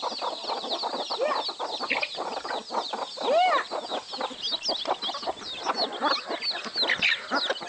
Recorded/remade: recorded